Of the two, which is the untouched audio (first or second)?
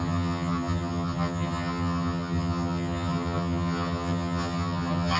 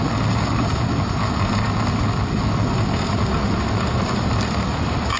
second